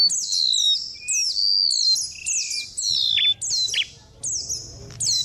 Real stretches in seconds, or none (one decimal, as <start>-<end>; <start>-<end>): 0.0-5.2